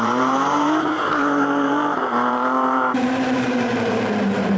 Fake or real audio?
fake